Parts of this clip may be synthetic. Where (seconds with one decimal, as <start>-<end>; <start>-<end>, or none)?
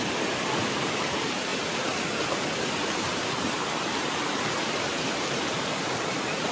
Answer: 0.0-1.5; 2.6-4.9; 5.4-6.5